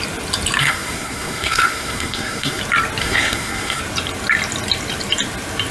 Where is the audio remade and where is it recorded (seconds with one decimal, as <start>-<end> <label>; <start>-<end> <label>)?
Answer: 0.0-0.6 recorded; 0.6-2.6 remade; 2.6-3.0 recorded; 3.0-3.8 remade; 3.8-5.7 recorded